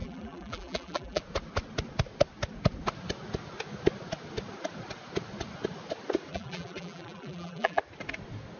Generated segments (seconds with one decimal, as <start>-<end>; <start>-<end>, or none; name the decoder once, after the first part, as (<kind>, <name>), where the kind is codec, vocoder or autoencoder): 0.0-1.2 (vocoder, BigVGAN v2); 6.3-7.8